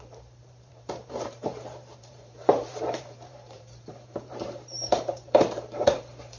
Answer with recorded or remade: remade